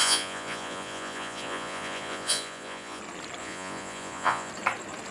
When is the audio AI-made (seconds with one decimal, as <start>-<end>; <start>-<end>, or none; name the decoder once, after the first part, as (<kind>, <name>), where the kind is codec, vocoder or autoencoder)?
0.0-3.0 (vocoder, Vocos); 3.4-4.5